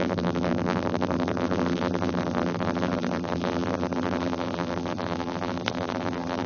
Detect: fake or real fake